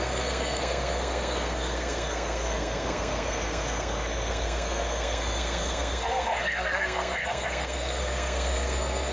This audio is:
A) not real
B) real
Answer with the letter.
A